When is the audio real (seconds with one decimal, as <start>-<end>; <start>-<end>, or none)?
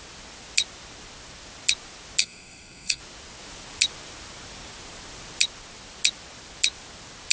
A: 0.0-2.2; 3.0-7.3